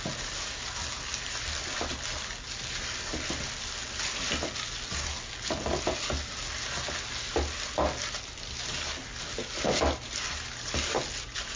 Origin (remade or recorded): recorded